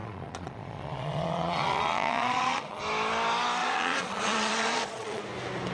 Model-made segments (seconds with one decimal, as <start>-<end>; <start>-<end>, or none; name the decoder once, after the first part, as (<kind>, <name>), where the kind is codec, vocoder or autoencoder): 0.0-2.8 (vocoder, Vocos); 3.6-5.2